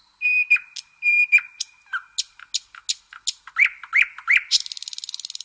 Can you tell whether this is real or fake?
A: real